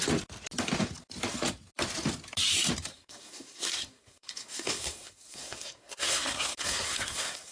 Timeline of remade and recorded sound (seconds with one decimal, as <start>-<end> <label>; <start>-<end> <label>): 0.0-2.9 recorded; 2.9-7.5 remade